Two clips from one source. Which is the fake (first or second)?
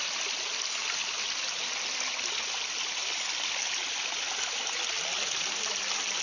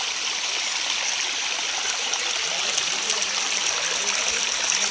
second